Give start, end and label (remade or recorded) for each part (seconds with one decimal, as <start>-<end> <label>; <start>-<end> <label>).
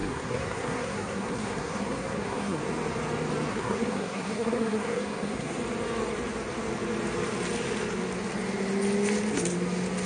0.0-2.6 remade; 2.6-3.5 recorded; 3.5-5.6 remade; 5.6-10.1 recorded